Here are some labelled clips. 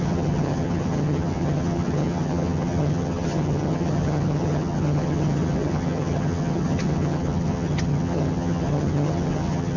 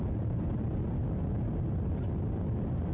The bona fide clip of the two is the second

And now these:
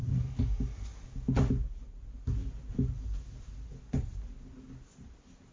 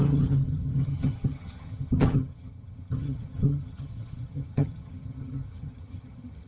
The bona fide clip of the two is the first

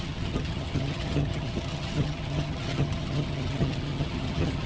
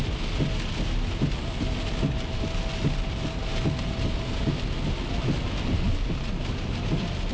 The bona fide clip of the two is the second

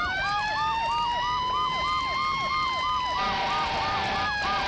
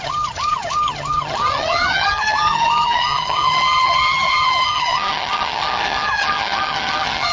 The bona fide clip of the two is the first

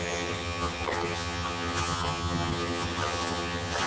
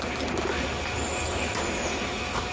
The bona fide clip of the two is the second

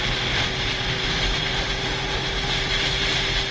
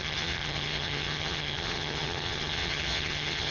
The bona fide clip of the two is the first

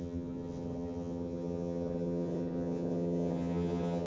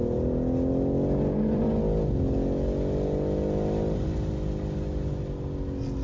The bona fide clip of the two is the second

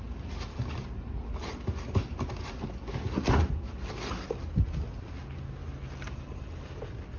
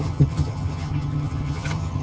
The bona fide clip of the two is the first